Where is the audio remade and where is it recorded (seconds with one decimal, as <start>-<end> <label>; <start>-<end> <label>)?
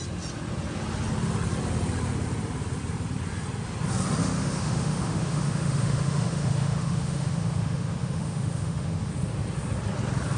0.0-4.2 recorded; 4.2-9.1 remade; 9.1-10.4 recorded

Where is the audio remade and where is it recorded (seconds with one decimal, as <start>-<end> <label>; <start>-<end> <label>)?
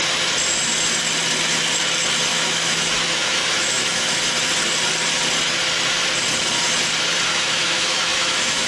0.0-2.3 recorded; 2.3-4.2 remade; 4.2-7.3 recorded; 7.3-8.7 remade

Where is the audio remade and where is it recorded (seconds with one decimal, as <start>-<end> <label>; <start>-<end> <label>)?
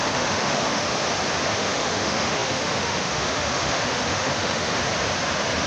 0.0-0.9 remade; 0.9-1.4 recorded; 1.4-4.9 remade; 4.9-5.7 recorded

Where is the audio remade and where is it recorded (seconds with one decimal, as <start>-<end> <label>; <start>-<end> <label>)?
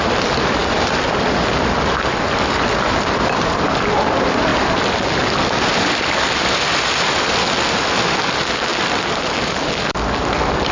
0.0-10.7 recorded